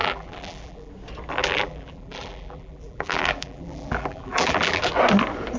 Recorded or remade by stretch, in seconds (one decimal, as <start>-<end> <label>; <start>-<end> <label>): 0.0-0.9 remade; 0.9-1.4 recorded; 1.4-4.8 remade; 4.8-5.6 recorded